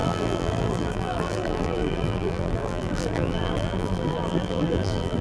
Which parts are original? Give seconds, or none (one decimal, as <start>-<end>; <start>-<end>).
none